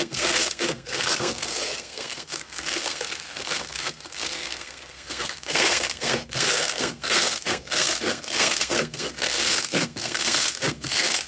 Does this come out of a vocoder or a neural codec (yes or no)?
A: yes